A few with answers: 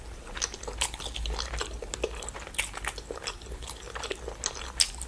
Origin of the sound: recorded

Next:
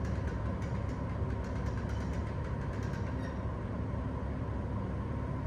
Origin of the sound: recorded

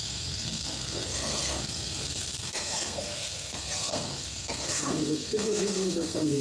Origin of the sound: remade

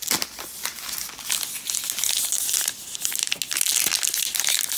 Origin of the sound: recorded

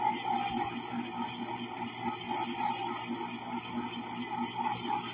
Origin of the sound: recorded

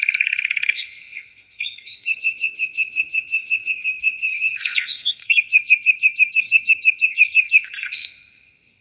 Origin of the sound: remade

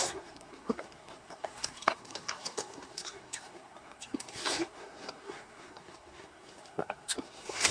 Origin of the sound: remade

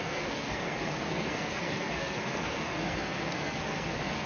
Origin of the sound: remade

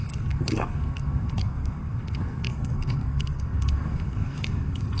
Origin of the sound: remade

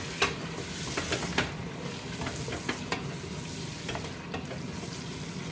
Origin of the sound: recorded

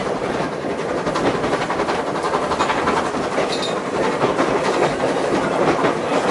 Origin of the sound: recorded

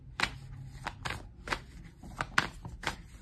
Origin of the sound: recorded